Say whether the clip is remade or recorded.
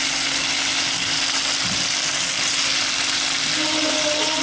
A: recorded